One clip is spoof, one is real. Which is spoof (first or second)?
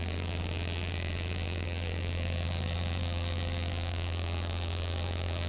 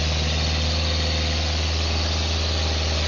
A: first